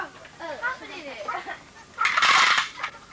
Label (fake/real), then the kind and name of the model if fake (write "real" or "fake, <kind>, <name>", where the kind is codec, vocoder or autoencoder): real